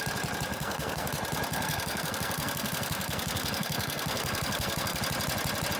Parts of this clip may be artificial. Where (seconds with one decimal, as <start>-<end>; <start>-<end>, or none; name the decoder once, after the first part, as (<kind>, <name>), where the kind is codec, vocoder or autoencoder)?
0.5-1.1 (codec, SNAC); 1.5-5.0